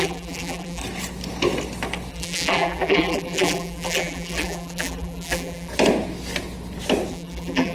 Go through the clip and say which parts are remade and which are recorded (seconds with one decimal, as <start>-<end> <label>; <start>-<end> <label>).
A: 0.0-0.8 remade; 0.8-2.1 recorded; 2.1-5.7 remade; 5.7-7.1 recorded; 7.1-7.7 remade